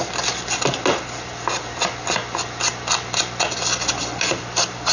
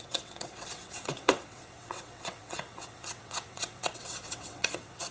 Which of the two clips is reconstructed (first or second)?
second